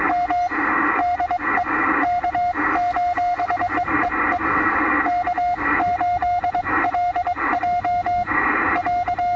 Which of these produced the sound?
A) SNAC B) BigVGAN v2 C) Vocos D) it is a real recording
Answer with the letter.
D